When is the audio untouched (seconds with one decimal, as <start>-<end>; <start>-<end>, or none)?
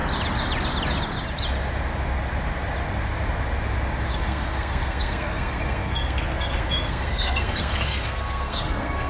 0.0-4.1